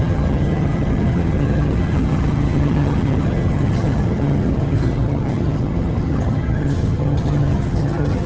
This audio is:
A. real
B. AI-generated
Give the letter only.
B